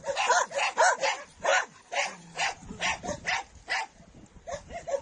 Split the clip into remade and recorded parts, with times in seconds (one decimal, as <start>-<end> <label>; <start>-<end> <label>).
0.0-1.5 recorded; 1.5-3.5 remade; 3.5-5.0 recorded